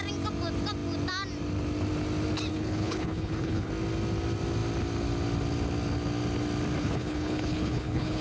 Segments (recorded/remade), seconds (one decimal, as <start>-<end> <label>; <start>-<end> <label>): 0.0-2.5 recorded; 2.5-3.7 remade; 3.7-6.8 recorded; 6.8-8.2 remade